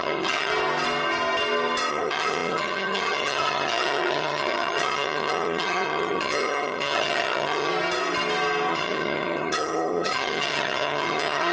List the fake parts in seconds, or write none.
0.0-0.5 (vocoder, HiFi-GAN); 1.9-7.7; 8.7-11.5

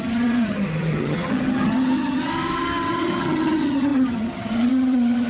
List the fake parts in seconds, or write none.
0.0-2.3 (vocoder, HiFi-GAN); 2.9-5.3

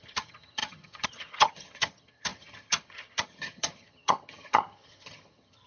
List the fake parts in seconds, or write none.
0.0-5.7 (vocoder, HiFi-GAN)

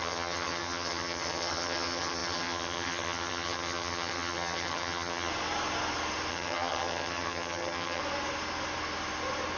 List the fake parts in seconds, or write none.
0.0-5.3 (vocoder, HiFi-GAN); 6.3-8.0

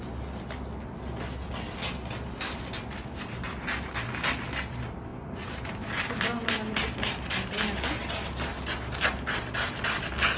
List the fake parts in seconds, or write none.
none